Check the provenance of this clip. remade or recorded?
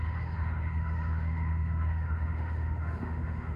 remade